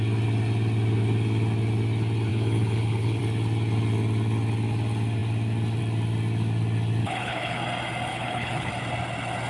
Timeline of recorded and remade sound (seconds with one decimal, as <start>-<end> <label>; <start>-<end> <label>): 0.0-2.3 recorded; 2.3-3.2 remade; 3.2-7.0 recorded; 7.0-7.6 remade; 7.6-8.1 recorded; 8.1-8.7 remade; 8.7-9.5 recorded